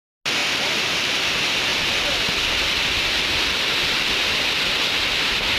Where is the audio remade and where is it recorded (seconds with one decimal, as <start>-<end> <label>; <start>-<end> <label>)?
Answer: 0.0-0.4 recorded; 0.4-1.0 remade; 1.0-1.7 recorded; 1.7-2.5 remade; 2.5-5.6 recorded